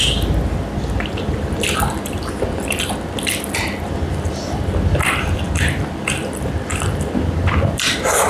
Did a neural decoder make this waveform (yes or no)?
yes